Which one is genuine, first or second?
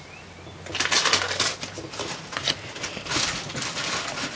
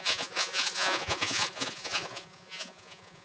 first